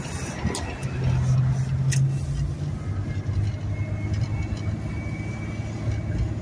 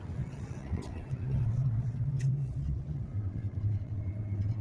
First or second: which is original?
first